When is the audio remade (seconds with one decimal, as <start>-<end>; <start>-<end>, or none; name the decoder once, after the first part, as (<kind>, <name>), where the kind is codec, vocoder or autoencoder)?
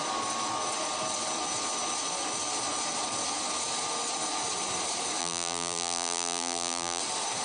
5.2-7.0 (vocoder, BigVGAN v2)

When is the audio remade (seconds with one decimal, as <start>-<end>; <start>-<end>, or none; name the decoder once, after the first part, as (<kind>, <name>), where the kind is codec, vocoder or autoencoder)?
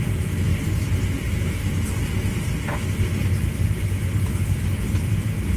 none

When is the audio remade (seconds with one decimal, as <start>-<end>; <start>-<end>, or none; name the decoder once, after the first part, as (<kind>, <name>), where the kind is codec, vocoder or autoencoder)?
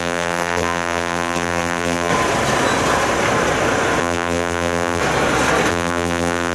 0.0-2.1 (vocoder, BigVGAN v2); 4.0-5.0; 5.7-6.5